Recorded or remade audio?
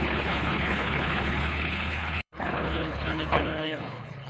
remade